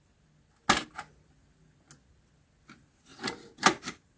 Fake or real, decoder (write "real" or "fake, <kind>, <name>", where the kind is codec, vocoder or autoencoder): real